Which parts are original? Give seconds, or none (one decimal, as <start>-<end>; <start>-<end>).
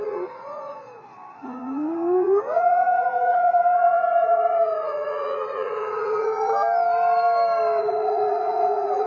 6.5-7.8